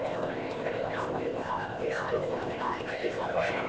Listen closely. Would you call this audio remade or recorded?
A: remade